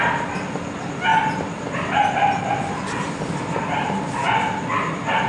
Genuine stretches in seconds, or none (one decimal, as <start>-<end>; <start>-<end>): 0.0-5.3